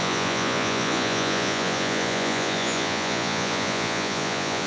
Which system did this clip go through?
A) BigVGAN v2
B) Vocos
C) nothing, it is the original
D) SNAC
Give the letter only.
B